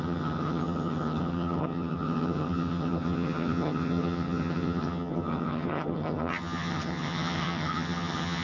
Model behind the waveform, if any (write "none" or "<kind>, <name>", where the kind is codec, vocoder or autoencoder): vocoder, HiFi-GAN